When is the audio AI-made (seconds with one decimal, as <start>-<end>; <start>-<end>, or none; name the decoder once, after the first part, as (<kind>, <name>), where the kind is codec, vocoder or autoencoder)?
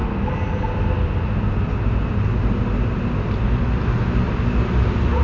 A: none